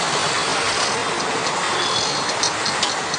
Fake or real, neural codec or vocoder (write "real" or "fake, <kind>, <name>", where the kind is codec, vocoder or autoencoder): real